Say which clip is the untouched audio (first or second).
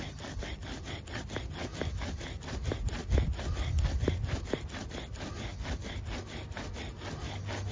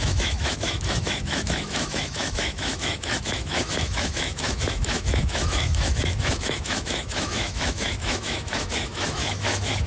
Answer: first